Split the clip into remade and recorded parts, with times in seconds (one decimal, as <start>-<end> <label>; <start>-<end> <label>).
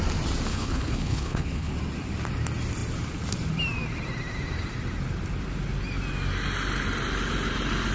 0.0-0.5 recorded; 0.5-1.7 remade; 1.7-7.9 recorded